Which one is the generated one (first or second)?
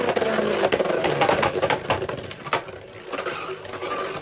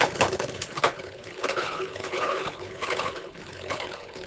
second